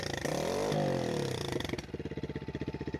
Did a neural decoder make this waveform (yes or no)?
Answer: no